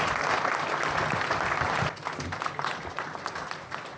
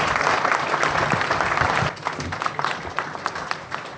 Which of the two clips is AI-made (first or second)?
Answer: second